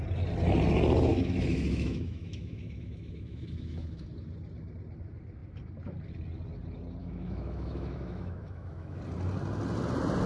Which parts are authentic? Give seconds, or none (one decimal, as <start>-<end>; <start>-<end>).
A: 0.0-1.1; 4.1-7.0; 9.0-10.3